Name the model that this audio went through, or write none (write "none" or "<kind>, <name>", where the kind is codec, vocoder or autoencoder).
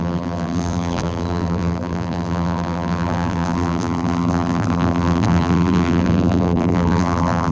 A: vocoder, BigVGAN v2